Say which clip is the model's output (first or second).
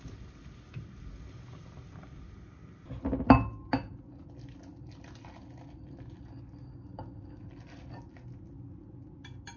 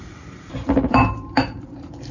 second